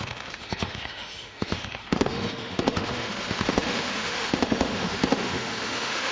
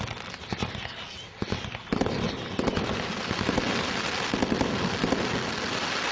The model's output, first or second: first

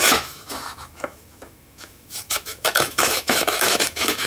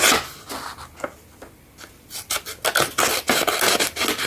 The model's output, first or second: first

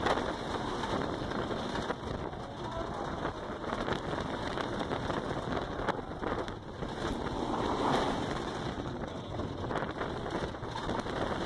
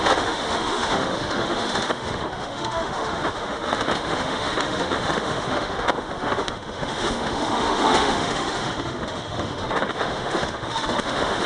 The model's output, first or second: second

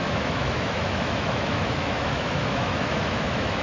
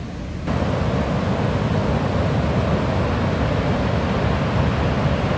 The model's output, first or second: first